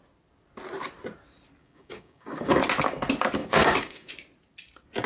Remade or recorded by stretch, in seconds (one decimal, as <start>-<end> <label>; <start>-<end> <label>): 0.0-1.6 recorded; 1.6-2.6 remade; 2.6-3.4 recorded; 3.4-4.1 remade; 4.1-5.1 recorded